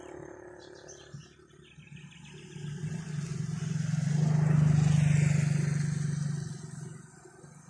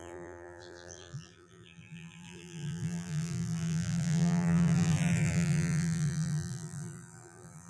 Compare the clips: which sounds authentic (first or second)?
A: first